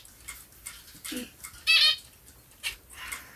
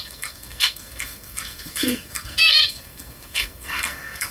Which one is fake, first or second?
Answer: second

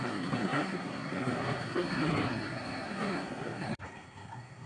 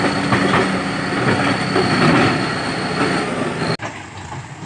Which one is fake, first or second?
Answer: first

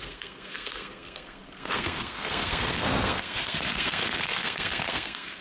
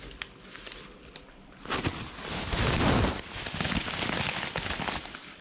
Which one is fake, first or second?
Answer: first